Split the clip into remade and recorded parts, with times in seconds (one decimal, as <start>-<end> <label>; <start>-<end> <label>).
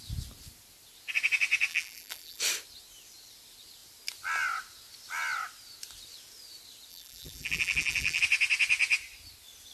0.0-1.7 recorded; 1.7-2.4 remade; 2.4-6.9 recorded; 6.9-8.2 remade; 8.2-9.7 recorded